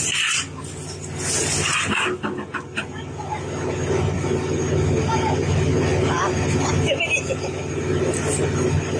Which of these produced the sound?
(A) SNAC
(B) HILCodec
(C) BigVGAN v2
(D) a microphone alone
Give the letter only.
D